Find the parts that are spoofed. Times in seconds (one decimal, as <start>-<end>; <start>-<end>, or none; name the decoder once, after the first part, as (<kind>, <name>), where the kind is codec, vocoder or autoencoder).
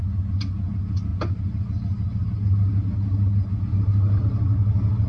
none